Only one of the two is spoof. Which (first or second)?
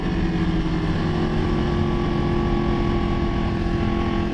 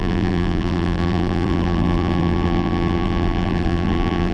second